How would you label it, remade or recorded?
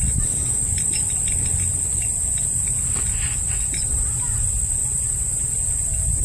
recorded